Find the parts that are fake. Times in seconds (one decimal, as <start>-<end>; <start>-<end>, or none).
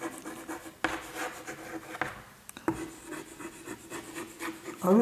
none